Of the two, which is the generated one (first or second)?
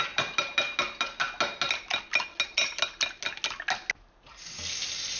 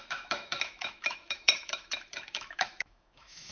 second